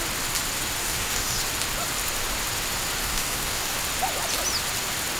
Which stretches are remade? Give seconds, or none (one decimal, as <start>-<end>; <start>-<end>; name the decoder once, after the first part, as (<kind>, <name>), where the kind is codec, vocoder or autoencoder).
0.8-1.4 (codec, DAC); 3.0-3.8